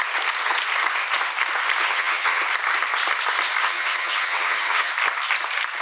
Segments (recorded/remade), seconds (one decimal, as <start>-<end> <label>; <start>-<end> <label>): 0.0-1.8 recorded; 1.8-2.4 remade; 2.4-3.6 recorded; 3.6-4.9 remade; 4.9-5.8 recorded